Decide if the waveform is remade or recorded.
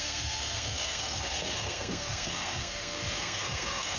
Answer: remade